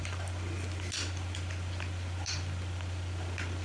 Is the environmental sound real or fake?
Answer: real